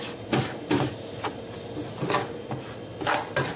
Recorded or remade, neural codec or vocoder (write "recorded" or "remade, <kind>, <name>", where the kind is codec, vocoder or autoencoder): recorded